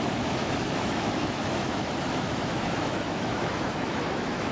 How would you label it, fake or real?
fake